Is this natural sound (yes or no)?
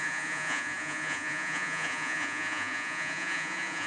no